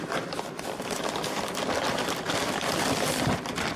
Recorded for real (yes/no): no